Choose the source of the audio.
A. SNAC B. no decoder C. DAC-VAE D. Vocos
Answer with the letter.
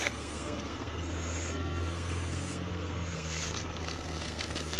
A